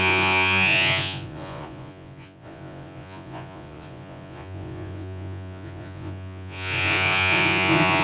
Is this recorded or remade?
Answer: remade